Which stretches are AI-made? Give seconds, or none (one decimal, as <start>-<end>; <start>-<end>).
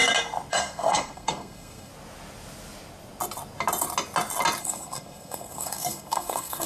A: 0.5-1.9; 4.6-6.7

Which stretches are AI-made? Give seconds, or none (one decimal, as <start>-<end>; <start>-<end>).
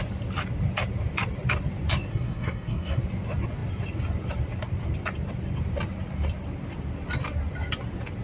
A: 2.1-3.0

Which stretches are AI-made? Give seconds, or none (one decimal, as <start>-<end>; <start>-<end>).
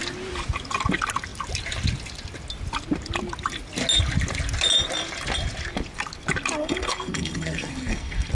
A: 6.6-8.3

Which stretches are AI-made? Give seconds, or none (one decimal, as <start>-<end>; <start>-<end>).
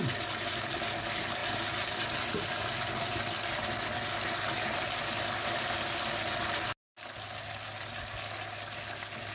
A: none